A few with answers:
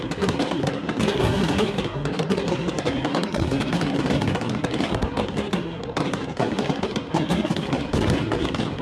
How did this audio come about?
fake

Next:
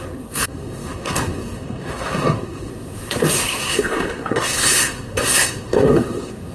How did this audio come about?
fake